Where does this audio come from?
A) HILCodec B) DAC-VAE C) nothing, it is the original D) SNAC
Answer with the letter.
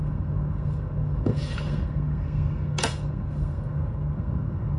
D